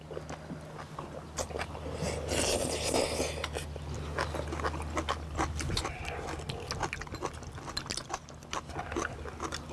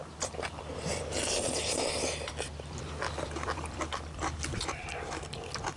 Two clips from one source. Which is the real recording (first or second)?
first